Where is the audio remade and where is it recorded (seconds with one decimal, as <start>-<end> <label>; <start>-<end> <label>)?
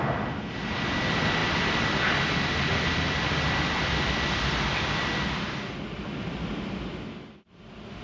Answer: 0.0-8.0 recorded